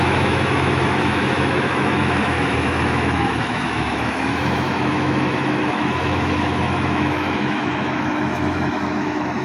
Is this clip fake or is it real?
fake